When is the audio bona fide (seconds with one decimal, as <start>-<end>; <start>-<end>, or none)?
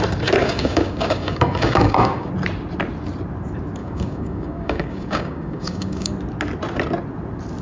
0.0-0.4; 2.3-3.8; 6.1-7.6